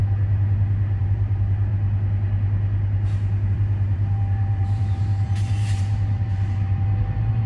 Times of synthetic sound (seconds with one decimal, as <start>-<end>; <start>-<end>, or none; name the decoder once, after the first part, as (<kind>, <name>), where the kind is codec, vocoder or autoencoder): 1.0-1.7 (vocoder, BigVGAN v2); 3.5-7.5